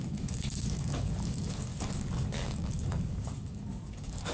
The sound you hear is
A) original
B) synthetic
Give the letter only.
B